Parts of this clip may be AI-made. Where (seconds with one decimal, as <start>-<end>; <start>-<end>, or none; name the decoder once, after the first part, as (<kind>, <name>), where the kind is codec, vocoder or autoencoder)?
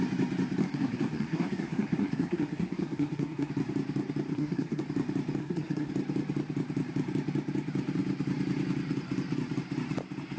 0.6-3.5 (codec, SNAC); 4.3-4.8; 5.4-5.9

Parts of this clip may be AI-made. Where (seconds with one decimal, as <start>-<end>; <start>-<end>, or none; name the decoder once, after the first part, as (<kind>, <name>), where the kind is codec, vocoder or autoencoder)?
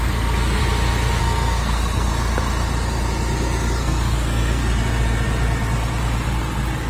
0.0-0.6 (codec, SNAC); 1.2-2.1; 3.8-4.6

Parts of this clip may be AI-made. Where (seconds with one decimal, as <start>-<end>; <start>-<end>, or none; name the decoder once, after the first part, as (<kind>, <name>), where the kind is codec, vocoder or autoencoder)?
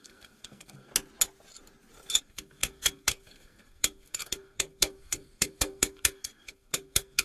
0.0-0.9 (codec, SNAC); 2.2-7.2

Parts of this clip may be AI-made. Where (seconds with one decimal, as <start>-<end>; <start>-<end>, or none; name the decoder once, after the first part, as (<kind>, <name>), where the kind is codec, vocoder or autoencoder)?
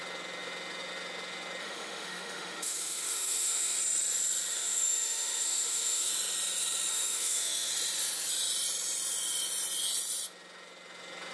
1.6-3.8 (autoencoder, DAC-VAE); 4.5-6.1; 6.9-7.7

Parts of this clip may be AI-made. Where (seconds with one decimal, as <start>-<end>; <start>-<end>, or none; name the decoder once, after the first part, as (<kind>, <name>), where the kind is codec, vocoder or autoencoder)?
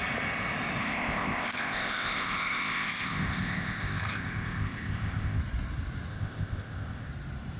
0.8-5.4 (codec, ZipCodec); 6.1-7.1